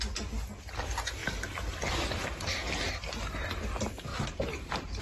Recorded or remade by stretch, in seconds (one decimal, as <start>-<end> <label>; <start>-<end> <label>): 0.0-4.1 recorded; 4.1-5.0 remade